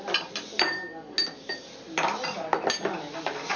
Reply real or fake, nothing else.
real